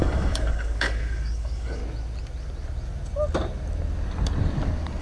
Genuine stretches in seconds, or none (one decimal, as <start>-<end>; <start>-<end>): 1.8-5.0